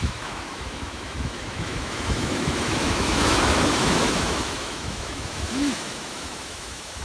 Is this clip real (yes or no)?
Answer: no